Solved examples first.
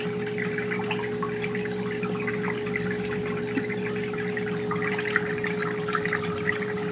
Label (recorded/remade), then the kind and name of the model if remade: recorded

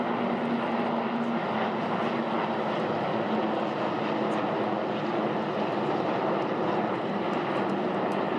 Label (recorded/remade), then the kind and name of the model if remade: recorded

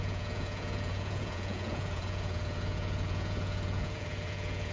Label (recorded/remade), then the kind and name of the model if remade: remade, vocoder, Vocos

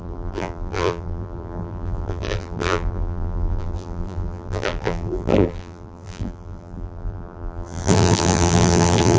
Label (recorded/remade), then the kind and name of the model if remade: remade, vocoder, BigVGAN v2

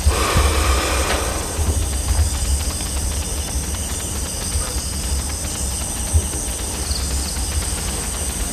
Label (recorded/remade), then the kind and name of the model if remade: recorded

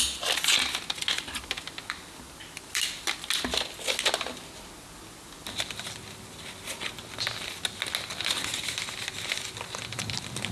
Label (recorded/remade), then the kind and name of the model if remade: recorded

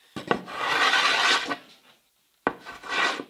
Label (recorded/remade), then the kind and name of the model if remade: recorded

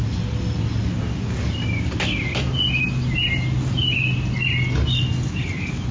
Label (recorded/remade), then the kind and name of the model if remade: recorded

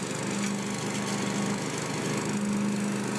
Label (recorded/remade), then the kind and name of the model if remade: recorded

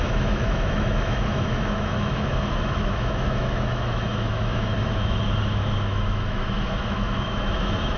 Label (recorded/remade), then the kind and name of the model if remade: remade, autoencoder, DAC-VAE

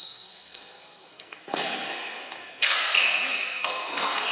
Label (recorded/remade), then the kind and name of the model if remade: remade, codec, SNAC